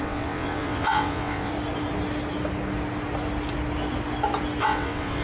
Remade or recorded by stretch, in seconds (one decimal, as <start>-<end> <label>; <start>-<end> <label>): 0.0-1.5 remade; 1.5-4.6 recorded; 4.6-5.2 remade